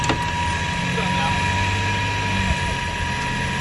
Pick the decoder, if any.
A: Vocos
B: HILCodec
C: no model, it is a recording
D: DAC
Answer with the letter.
C